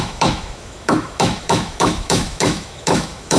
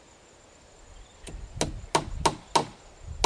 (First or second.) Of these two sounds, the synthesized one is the first